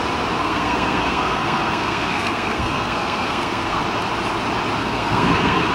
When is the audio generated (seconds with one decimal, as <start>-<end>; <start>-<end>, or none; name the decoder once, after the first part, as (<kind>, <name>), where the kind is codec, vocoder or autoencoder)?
0.4-3.8 (codec, SNAC); 4.8-5.7